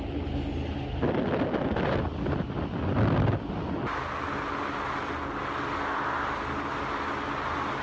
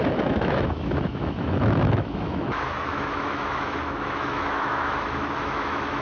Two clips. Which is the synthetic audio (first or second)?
second